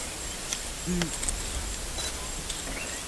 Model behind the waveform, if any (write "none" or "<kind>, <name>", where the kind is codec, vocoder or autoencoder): none